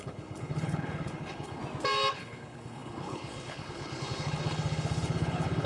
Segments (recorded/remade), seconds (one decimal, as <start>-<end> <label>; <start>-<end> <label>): 0.0-1.6 remade; 1.6-2.1 recorded; 2.1-5.7 remade